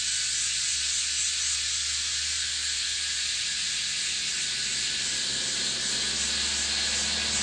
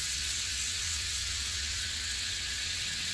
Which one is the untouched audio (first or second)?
first